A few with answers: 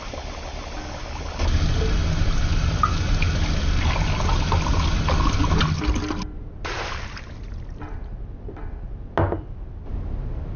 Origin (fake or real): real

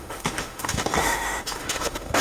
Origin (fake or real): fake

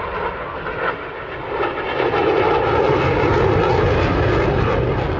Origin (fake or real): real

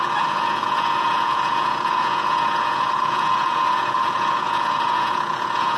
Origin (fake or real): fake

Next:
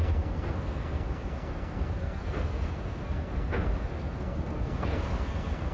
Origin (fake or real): fake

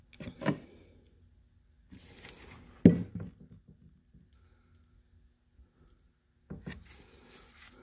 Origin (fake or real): real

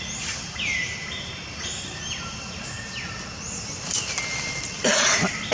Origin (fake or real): real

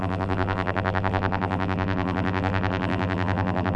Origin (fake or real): fake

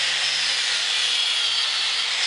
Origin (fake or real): real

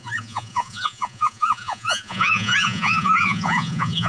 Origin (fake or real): fake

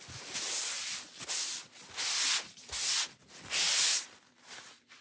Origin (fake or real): real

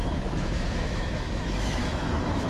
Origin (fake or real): fake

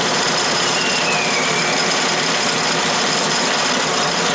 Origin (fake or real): fake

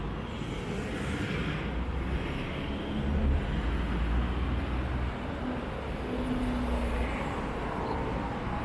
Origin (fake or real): real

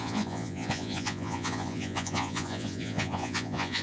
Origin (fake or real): fake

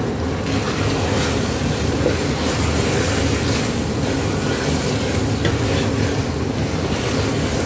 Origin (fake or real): real